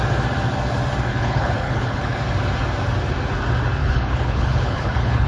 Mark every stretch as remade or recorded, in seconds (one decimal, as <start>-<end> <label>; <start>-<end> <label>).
0.0-1.1 recorded; 1.1-2.2 remade; 2.2-3.8 recorded; 3.8-5.3 remade